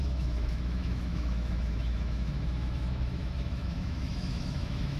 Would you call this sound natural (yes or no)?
no